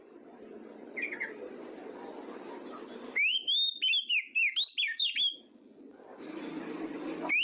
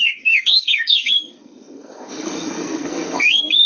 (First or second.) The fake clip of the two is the second